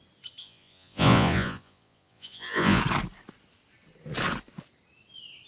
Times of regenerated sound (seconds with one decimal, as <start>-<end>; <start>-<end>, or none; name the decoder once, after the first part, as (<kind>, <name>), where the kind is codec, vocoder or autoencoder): 0.4-2.8 (vocoder, Vocos)